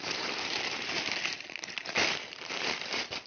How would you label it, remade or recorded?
remade